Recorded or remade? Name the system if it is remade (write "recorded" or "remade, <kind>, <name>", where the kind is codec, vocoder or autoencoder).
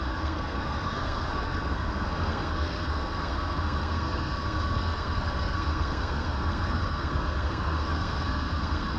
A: remade, codec, SNAC